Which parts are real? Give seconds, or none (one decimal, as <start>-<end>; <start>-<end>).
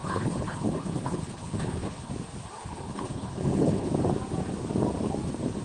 2.1-2.6; 3.9-5.6